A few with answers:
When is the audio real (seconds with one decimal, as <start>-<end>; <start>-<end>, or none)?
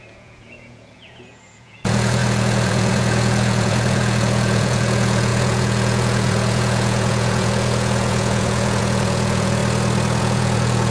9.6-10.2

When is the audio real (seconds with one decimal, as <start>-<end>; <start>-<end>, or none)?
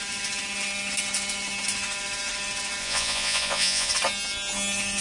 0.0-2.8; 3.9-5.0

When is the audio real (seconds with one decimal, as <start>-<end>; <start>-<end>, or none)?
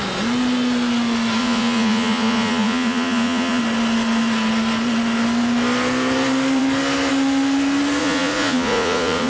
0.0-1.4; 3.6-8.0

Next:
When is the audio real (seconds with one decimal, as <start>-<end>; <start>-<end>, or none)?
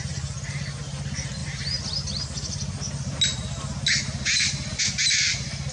0.0-5.7